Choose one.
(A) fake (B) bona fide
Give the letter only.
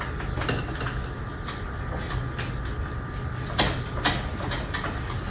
B